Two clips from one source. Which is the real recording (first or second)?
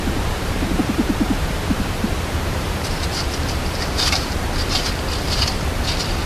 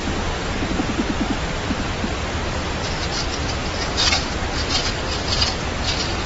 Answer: second